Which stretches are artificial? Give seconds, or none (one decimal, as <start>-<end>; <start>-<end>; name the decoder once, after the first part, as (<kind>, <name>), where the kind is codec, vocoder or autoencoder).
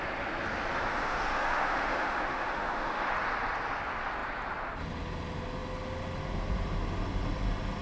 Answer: 0.9-3.1 (autoencoder, DAC-VAE)